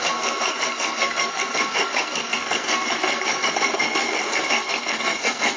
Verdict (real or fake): fake